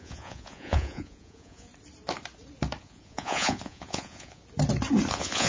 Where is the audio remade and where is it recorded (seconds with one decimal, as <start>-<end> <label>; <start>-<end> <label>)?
0.0-1.7 remade; 1.7-2.8 recorded; 2.8-4.4 remade; 4.4-5.1 recorded; 5.1-5.5 remade